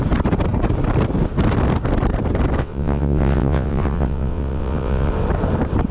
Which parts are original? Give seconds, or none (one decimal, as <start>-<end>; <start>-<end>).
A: 0.0-2.6; 5.1-5.9